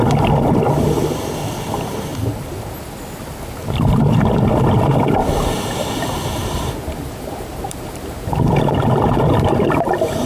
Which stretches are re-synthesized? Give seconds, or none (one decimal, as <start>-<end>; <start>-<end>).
2.1-2.7; 6.4-10.3